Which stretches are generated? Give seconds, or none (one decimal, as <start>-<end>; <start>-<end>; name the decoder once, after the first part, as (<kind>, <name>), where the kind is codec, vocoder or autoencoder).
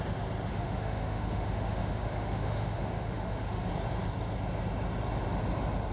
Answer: 0.5-3.7 (autoencoder, DAC-VAE)